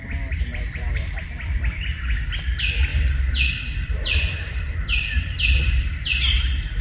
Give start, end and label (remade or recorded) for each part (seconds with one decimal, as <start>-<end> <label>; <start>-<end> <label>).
0.0-0.5 recorded; 0.5-1.8 remade; 1.8-2.9 recorded; 2.9-5.9 remade; 5.9-6.8 recorded